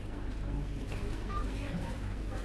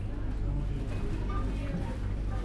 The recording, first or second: second